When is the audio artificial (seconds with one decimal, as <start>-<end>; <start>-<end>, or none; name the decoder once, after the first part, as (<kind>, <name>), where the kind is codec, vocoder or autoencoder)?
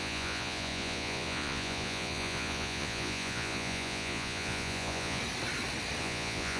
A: 0.0-5.2 (vocoder, Vocos); 6.0-6.6